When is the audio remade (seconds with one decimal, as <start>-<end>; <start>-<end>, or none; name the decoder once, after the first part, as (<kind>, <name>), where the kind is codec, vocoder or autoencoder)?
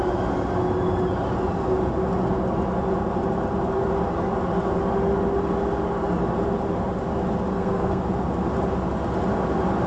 7.5-8.0 (codec, SNAC)